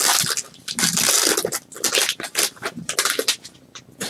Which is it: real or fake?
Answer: real